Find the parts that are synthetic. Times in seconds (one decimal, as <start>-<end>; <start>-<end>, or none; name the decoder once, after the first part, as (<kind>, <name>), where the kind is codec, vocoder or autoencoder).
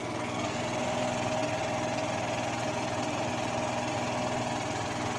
0.0-0.6 (codec, SNAC)